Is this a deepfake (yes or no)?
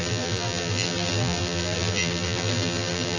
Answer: yes